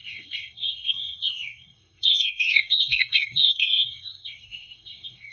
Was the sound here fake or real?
fake